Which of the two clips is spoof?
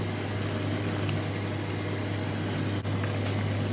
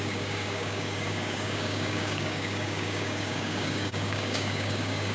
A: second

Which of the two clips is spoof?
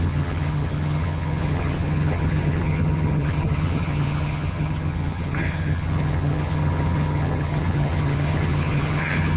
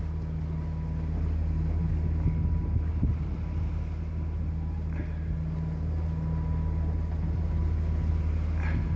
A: first